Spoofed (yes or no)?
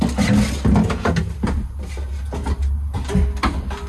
no